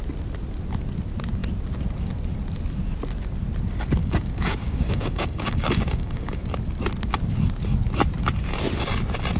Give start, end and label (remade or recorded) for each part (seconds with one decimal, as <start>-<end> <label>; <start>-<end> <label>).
0.0-4.0 recorded; 4.0-6.4 remade; 6.4-9.4 recorded